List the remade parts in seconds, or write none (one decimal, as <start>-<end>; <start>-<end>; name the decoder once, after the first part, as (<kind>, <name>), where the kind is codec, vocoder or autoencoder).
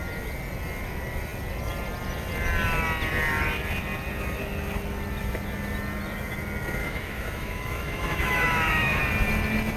6.8-9.0 (autoencoder, DAC-VAE)